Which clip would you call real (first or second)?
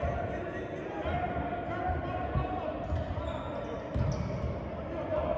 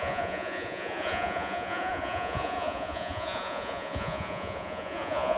first